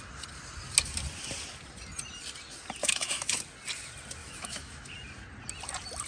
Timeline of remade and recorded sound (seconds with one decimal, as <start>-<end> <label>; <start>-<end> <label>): 0.0-2.8 recorded; 2.8-3.4 remade; 3.4-4.2 recorded; 4.2-4.9 remade; 4.9-6.1 recorded